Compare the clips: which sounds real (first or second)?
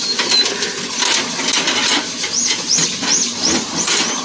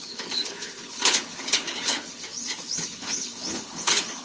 first